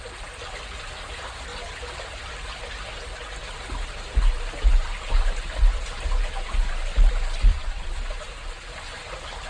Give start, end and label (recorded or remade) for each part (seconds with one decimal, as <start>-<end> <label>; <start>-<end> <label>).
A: 0.0-7.5 recorded; 7.5-8.7 remade; 8.7-9.5 recorded